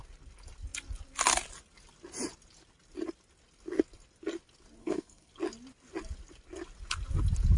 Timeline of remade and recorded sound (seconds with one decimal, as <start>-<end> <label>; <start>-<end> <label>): 0.0-4.8 recorded; 4.8-5.3 remade; 5.3-7.6 recorded